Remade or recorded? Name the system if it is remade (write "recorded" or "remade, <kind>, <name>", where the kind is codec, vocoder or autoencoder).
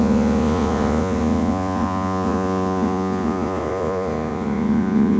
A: remade, vocoder, Vocos